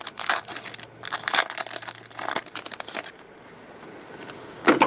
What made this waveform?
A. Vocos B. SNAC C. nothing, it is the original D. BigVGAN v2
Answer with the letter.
C